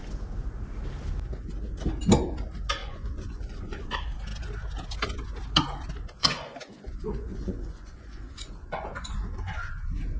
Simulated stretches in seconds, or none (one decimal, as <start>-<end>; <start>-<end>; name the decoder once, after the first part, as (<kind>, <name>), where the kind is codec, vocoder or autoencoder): 2.8-3.8 (vocoder, Vocos); 6.2-9.7

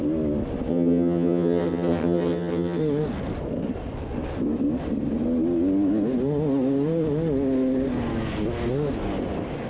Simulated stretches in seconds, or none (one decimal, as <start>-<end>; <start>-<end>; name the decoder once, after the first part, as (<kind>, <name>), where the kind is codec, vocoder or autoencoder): 0.7-2.8 (vocoder, HiFi-GAN)

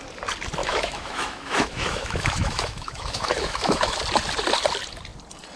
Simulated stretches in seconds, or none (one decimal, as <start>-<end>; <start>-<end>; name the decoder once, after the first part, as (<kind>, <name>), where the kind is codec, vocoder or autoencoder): 0.6-4.0 (autoencoder, DAC-VAE)